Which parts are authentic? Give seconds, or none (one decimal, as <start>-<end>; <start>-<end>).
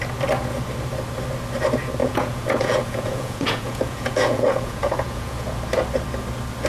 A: 0.0-2.0; 5.6-6.7